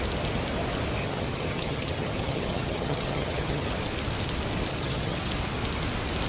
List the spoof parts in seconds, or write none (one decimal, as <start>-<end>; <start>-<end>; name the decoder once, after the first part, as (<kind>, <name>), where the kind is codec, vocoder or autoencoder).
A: 1.0-3.7 (vocoder, HiFi-GAN); 4.7-5.3